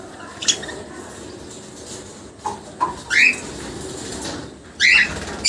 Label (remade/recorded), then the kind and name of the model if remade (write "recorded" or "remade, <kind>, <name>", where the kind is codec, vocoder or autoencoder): recorded